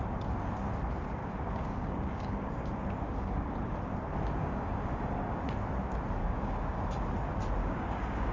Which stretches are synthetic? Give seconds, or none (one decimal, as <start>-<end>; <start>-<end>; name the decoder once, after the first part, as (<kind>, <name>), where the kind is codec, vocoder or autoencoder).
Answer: 1.2-3.5 (codec, DAC); 4.4-5.1; 6.2-6.8; 7.6-8.3